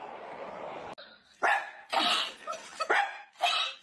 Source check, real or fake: real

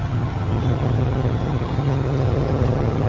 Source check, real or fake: fake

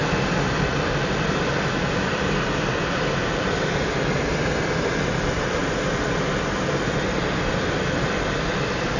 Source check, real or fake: real